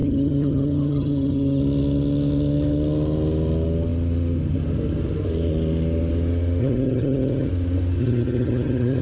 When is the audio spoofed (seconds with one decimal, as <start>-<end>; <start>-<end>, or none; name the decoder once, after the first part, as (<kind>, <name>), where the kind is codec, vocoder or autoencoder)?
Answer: 0.0-1.6 (vocoder, HiFi-GAN); 6.6-7.5; 8.0-9.0